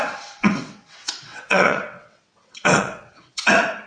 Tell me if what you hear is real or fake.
fake